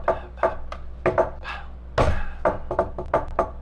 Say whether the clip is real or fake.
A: real